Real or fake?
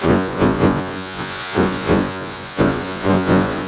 fake